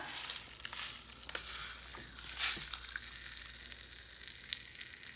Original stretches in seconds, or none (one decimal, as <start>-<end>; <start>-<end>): 0.0-5.2